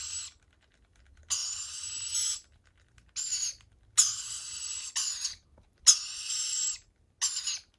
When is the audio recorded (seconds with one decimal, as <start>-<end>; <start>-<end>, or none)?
0.0-7.8